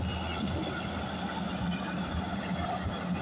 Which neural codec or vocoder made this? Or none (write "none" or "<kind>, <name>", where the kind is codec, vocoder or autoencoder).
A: none